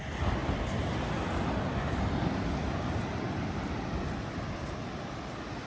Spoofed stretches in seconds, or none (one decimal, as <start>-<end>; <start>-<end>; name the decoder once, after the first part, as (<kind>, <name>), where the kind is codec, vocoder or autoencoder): none